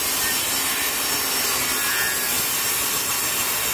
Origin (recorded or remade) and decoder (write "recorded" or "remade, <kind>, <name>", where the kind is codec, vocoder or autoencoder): remade, vocoder, BigVGAN v2